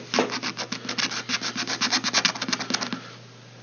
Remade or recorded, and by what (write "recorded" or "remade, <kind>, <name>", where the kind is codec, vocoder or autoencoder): recorded